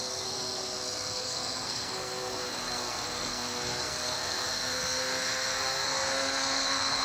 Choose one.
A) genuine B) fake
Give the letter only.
B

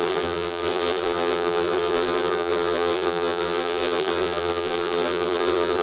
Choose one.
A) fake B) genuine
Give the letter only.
A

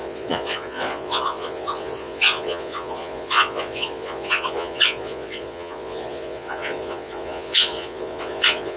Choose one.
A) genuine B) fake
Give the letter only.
B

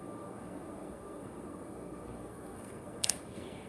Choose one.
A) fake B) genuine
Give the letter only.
A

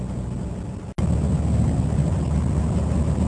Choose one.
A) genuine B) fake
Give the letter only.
A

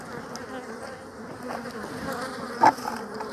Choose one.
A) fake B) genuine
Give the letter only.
B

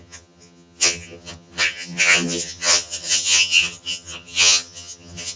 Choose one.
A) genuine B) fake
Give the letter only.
B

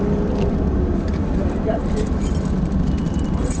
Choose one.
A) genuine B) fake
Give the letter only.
B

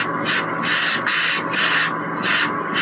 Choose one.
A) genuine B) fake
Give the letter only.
A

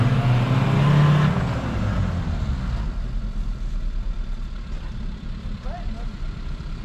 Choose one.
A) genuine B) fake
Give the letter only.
A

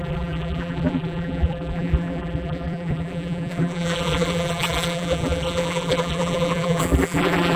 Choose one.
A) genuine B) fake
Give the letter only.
B